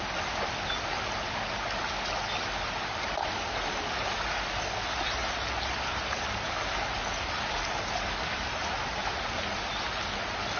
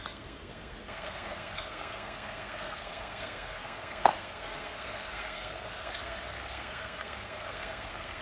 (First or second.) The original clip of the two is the first